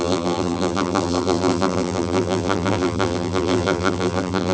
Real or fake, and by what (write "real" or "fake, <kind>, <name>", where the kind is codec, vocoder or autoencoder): fake, vocoder, BigVGAN v2